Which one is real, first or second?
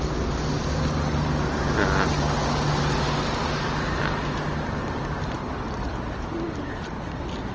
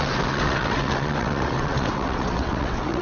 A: first